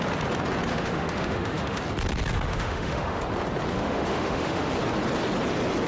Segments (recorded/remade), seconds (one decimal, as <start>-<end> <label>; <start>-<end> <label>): 0.0-0.7 recorded; 0.7-1.8 remade; 1.8-2.5 recorded; 2.5-3.2 remade; 3.2-3.7 recorded; 3.7-4.7 remade; 4.7-5.9 recorded